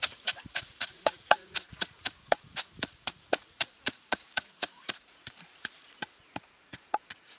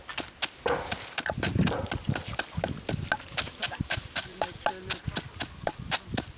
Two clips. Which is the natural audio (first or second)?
second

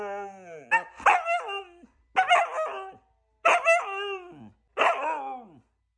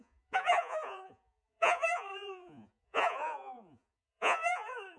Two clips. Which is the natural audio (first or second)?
first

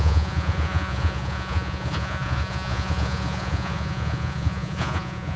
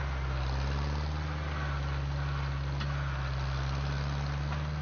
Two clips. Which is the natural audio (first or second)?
second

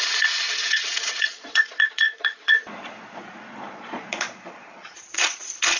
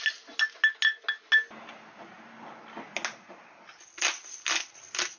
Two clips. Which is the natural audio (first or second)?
second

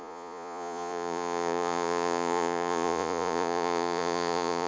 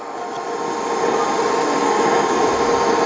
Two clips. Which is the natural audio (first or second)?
second